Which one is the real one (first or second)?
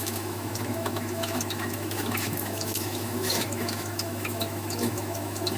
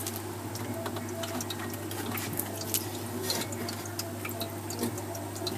second